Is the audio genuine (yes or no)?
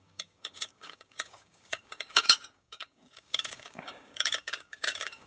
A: no